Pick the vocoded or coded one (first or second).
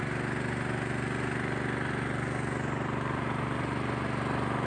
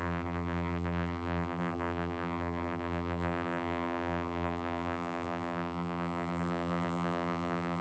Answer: second